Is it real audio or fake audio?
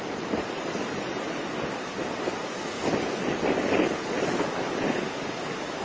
real